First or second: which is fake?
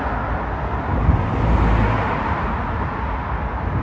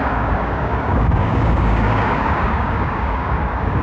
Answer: second